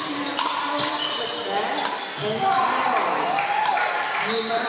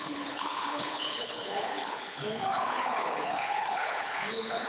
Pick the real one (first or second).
first